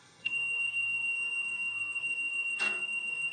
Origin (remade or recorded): remade